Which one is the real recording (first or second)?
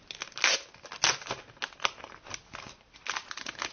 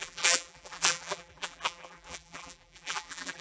first